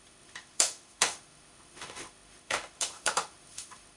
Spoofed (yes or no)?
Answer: yes